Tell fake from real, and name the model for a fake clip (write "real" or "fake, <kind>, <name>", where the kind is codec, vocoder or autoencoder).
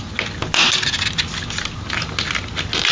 real